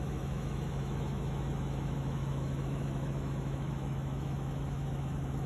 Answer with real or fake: fake